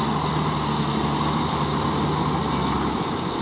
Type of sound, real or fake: real